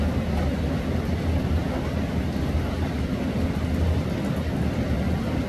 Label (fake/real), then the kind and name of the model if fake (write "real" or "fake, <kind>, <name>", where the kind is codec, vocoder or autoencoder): real